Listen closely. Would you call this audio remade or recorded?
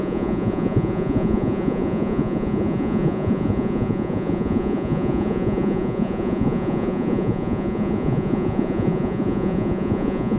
remade